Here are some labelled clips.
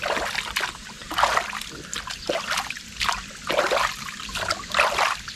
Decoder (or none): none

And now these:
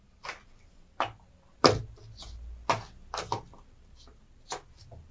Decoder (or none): none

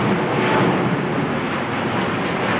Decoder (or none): none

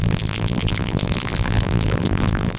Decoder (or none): vocoder, BigVGAN v2